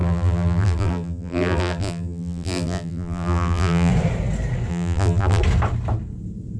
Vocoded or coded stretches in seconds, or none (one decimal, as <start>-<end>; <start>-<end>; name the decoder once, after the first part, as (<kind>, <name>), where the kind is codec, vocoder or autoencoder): 0.0-3.9 (vocoder, BigVGAN v2); 4.7-5.4